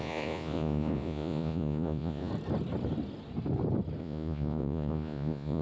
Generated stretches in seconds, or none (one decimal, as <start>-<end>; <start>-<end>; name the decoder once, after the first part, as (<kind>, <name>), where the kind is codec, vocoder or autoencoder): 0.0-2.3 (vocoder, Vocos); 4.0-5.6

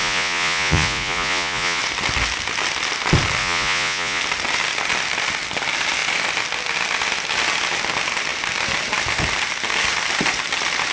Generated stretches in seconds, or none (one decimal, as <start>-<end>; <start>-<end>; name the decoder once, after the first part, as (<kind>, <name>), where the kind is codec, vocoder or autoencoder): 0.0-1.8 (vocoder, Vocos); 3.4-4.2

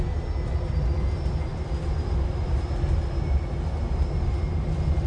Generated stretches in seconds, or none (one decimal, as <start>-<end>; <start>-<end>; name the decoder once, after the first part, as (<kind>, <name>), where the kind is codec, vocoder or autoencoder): none

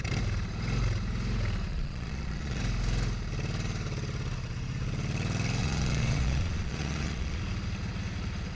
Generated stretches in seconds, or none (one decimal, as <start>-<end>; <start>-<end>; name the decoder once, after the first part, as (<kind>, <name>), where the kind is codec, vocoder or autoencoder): 1.7-2.6 (vocoder, Vocos); 5.6-7.4